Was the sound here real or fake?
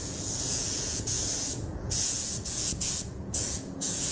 fake